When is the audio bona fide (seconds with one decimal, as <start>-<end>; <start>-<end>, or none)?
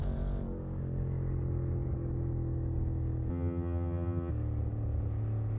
0.0-3.3; 4.3-5.6